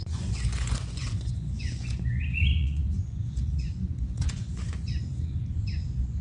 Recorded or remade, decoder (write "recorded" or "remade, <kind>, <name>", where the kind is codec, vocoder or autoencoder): remade, vocoder, Vocos